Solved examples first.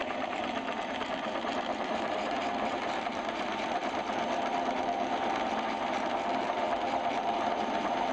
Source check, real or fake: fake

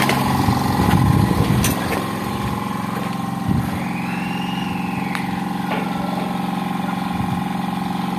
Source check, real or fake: real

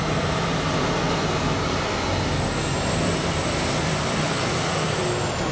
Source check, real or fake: fake